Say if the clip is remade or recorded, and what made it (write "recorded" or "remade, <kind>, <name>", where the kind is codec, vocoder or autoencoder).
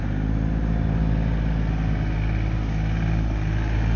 recorded